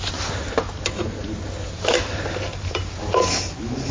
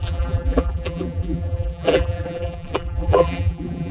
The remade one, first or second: second